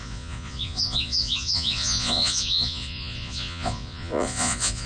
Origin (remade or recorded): remade